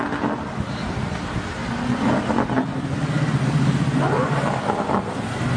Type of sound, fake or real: real